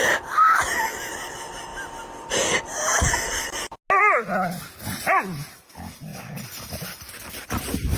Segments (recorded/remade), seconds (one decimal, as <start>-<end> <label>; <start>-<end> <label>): 0.0-8.0 recorded